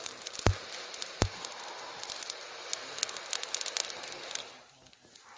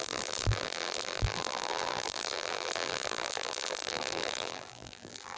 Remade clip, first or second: second